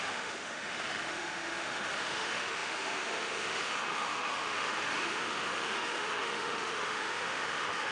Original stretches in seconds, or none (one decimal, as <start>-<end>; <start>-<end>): none